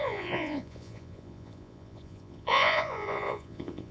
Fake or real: fake